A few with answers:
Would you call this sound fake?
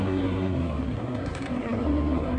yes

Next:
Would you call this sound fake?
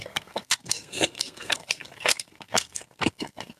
yes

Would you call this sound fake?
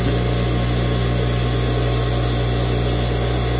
no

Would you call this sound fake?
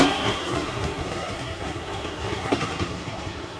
yes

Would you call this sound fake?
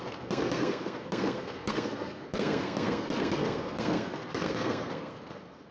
yes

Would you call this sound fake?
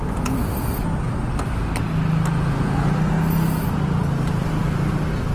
no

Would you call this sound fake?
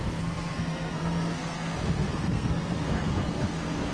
yes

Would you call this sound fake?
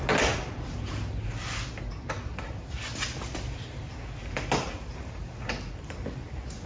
no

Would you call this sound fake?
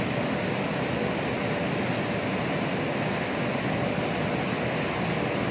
no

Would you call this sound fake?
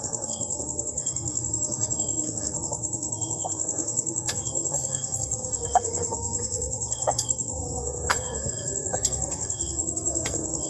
yes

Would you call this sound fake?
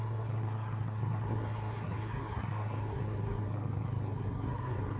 yes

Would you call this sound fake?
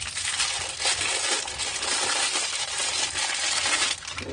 no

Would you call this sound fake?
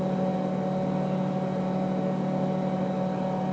no